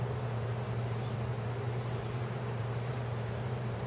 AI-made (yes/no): yes